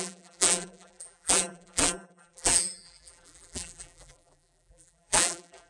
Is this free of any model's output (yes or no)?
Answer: no